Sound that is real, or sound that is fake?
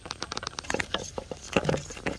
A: real